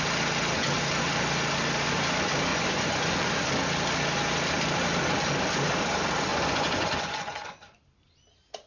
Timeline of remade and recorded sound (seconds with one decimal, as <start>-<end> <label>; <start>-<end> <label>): 0.0-2.5 recorded; 2.5-3.3 remade; 3.3-6.3 recorded; 6.3-7.8 remade; 7.8-8.7 recorded